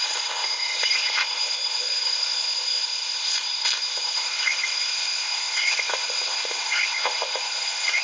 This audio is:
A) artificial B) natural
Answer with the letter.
A